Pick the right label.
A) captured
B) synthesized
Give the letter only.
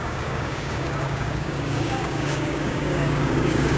B